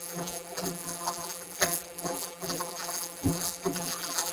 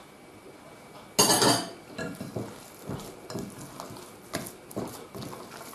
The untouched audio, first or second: second